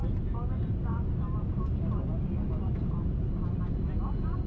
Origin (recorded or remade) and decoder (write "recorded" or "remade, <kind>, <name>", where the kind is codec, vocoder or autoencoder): recorded